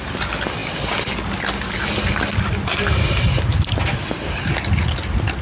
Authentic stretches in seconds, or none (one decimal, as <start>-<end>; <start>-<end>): 0.0-5.4